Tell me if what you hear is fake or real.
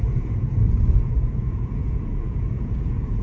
fake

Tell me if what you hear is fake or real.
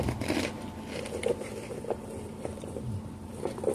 fake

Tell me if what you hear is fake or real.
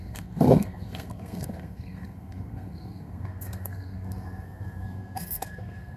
fake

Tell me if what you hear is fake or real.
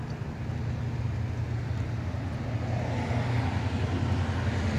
real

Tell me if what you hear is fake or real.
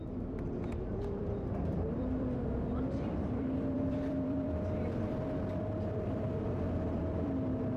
fake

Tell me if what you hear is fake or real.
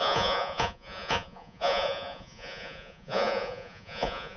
fake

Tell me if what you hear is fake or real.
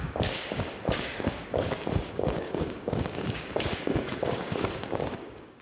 fake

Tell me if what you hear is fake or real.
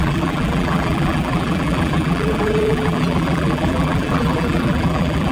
fake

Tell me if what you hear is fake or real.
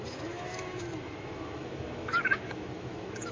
fake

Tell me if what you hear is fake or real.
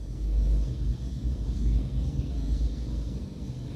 fake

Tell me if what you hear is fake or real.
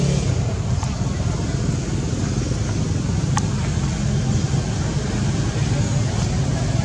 real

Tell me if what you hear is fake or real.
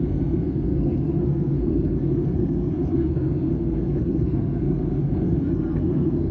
fake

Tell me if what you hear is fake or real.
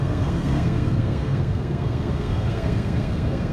fake